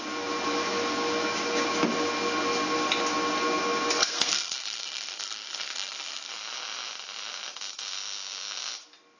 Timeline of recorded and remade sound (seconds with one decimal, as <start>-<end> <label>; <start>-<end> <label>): 0.0-4.0 recorded; 4.0-6.3 remade; 6.3-9.2 recorded